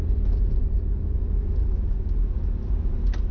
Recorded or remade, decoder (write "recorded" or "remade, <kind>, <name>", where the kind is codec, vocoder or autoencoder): recorded